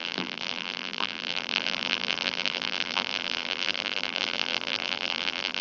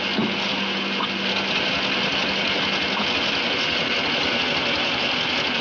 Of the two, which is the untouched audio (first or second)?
second